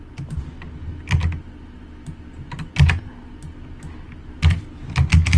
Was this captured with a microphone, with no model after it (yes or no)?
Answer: yes